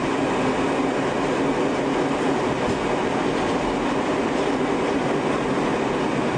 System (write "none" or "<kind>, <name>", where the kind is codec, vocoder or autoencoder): none